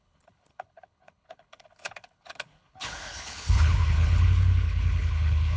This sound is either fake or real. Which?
fake